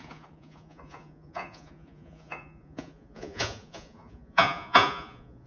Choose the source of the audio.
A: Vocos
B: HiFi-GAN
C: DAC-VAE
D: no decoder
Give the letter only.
A